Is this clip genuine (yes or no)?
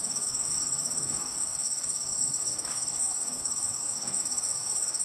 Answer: no